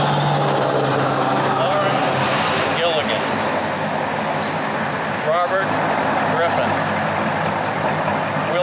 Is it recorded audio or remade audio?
recorded